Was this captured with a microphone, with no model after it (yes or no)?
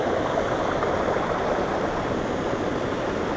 yes